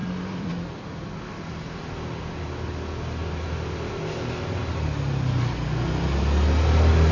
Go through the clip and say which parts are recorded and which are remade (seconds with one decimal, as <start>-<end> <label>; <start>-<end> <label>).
0.0-0.5 remade; 0.5-7.1 recorded